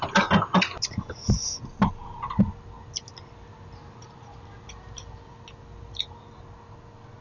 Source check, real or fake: real